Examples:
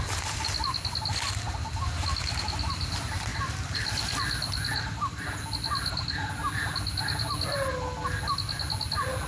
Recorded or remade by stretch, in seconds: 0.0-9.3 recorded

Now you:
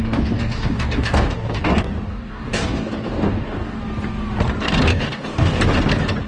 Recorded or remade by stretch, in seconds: 0.0-3.8 remade; 3.8-4.9 recorded; 4.9-5.6 remade; 5.6-6.3 recorded

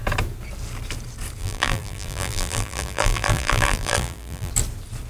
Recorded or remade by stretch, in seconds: 0.0-1.4 recorded; 1.4-4.5 remade; 4.5-5.1 recorded

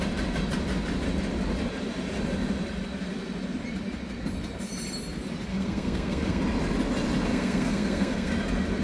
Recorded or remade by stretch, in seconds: 0.0-5.5 recorded; 5.5-6.4 remade; 6.4-7.3 recorded; 7.3-8.3 remade; 8.3-8.8 recorded